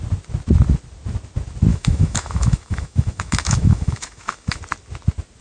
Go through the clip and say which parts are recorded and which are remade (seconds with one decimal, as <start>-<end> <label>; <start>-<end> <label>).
0.0-1.7 recorded; 1.7-4.6 remade; 4.6-5.4 recorded